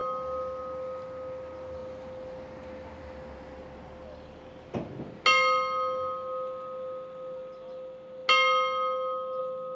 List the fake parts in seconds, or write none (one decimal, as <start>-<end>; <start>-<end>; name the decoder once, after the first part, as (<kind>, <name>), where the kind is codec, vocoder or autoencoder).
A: none